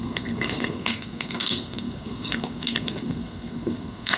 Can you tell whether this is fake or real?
fake